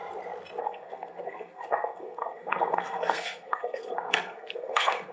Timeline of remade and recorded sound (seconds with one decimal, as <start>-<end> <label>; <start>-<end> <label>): 0.0-0.6 recorded; 0.6-5.1 remade